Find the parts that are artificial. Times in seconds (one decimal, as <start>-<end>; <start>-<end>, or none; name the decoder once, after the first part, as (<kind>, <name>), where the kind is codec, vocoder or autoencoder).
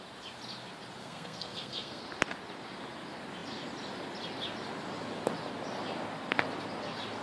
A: 1.0-2.0 (codec, SNAC)